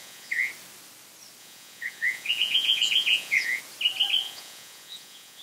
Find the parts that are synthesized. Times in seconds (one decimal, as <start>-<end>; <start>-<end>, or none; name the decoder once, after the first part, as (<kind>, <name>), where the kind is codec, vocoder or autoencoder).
0.0-0.5 (vocoder, Vocos); 1.4-3.6; 4.2-5.4